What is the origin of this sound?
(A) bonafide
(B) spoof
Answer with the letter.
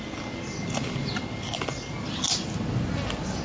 A